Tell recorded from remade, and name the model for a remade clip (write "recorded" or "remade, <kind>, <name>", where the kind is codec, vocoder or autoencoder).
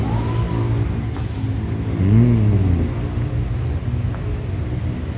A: recorded